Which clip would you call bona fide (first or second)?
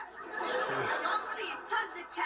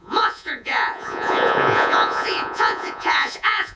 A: first